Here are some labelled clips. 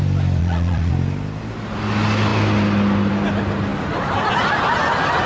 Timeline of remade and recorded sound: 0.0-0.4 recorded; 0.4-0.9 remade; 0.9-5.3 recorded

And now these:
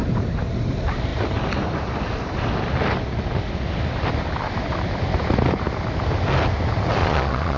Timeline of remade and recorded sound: 0.0-7.0 recorded; 7.0-7.6 remade

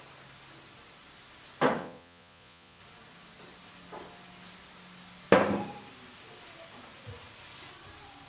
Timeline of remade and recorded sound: 0.0-1.8 recorded; 1.8-2.8 remade; 2.8-8.3 recorded

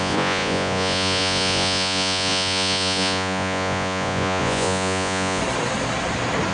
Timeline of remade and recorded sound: 0.0-5.4 remade; 5.4-6.5 recorded